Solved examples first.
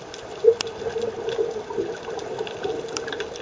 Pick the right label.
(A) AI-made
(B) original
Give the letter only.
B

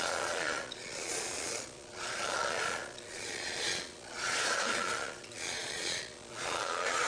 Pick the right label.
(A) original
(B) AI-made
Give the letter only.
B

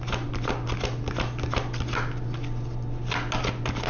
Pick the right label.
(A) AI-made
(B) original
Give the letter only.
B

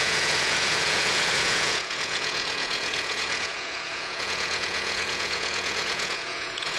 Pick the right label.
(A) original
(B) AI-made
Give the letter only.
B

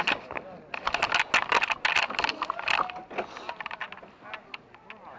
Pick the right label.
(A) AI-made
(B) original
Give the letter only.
B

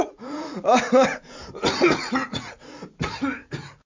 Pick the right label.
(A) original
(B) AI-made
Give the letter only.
B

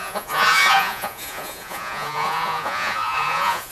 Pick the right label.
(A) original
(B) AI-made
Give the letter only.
B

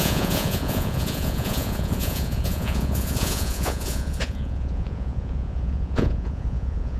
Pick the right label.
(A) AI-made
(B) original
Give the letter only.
A